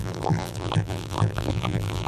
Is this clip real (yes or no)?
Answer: no